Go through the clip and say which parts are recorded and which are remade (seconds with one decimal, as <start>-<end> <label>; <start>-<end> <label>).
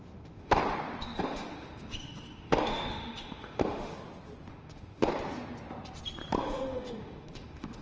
0.0-0.6 remade; 0.6-1.2 recorded; 1.2-3.9 remade; 3.9-4.5 recorded; 4.5-5.1 remade; 5.1-6.4 recorded; 6.4-7.8 remade